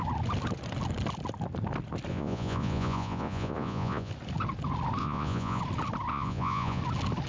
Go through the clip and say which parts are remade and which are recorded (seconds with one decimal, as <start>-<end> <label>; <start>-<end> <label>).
0.0-2.1 recorded; 2.1-4.1 remade; 4.1-5.0 recorded; 5.0-5.6 remade; 5.6-6.1 recorded; 6.1-6.8 remade; 6.8-7.3 recorded